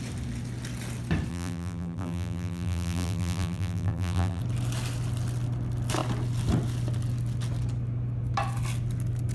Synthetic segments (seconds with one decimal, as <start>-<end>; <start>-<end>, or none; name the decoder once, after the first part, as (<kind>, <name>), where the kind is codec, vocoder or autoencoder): 1.3-4.4 (vocoder, BigVGAN v2)